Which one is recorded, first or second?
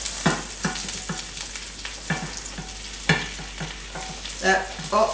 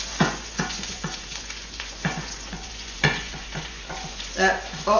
first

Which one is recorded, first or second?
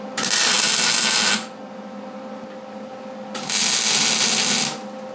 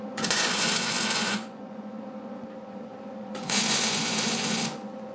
first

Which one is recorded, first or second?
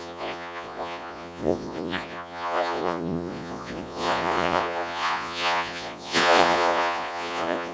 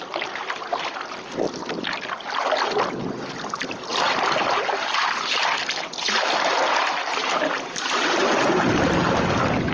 second